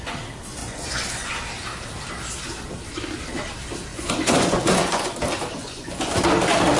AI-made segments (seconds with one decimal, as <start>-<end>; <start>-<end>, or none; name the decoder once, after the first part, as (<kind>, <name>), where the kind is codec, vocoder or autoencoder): 0.6-1.3 (vocoder, Vocos); 3.9-5.1; 5.6-6.1